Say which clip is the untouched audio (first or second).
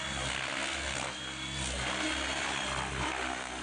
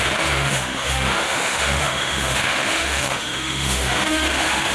first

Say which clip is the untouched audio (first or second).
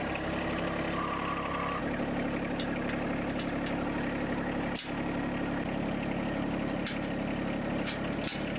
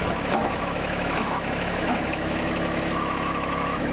first